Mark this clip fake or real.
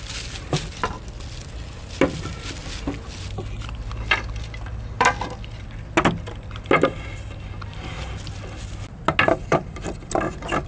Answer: real